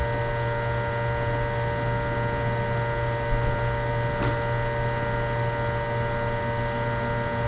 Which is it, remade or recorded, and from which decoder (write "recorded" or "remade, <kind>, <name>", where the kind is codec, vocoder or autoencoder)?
recorded